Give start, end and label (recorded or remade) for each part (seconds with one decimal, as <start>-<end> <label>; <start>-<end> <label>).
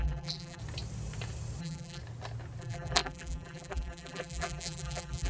0.0-0.6 remade; 0.6-1.6 recorded; 1.6-2.0 remade; 2.0-2.6 recorded; 2.6-5.3 remade